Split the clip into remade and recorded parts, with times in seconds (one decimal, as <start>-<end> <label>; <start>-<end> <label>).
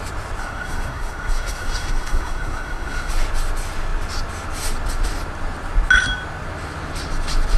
0.0-0.4 recorded; 0.4-3.1 remade; 3.1-7.6 recorded